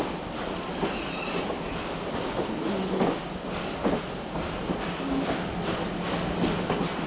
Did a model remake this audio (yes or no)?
no